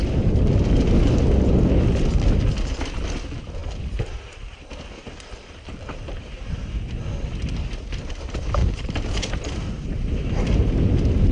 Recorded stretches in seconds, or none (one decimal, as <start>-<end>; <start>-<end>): 0.0-3.6; 4.2-5.0; 6.7-8.6; 10.4-11.3